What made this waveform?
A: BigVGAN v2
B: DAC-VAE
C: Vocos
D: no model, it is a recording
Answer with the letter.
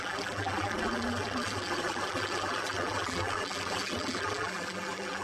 A